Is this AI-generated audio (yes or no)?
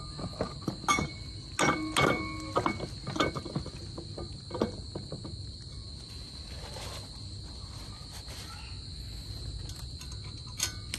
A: no